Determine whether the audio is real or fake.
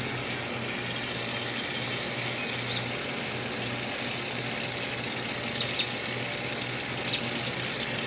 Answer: real